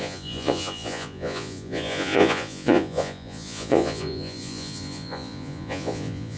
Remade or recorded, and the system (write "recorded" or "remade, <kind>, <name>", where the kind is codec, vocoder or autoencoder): remade, vocoder, Vocos